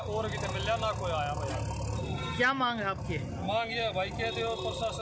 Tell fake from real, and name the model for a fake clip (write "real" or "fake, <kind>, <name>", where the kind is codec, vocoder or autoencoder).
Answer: real